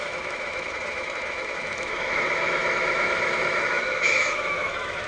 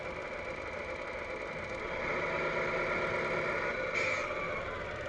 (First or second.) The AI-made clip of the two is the first